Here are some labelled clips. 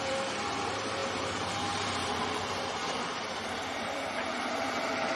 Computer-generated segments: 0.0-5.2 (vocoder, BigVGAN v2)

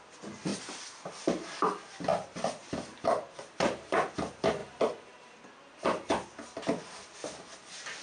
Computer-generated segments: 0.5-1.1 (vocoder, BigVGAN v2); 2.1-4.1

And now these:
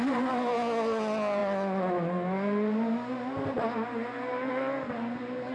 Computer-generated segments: none

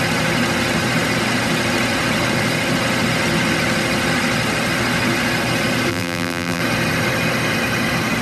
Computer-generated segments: 5.9-6.6 (vocoder, BigVGAN v2)

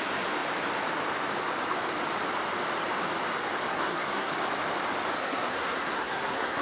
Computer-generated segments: 3.7-4.3 (codec, SNAC); 5.2-6.6